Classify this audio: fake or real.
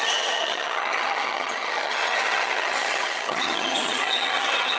fake